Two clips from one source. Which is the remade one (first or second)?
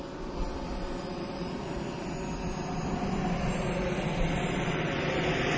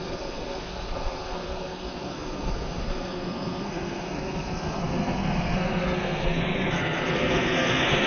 second